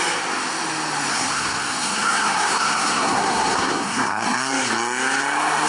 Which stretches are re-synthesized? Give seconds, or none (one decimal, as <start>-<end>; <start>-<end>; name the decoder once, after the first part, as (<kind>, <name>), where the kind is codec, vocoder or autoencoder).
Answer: 1.1-4.5 (codec, SNAC)